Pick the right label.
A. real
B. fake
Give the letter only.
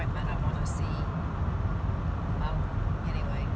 A